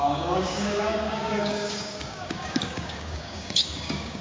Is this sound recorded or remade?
remade